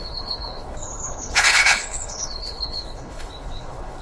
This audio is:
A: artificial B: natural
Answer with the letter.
A